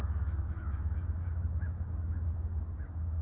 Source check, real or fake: fake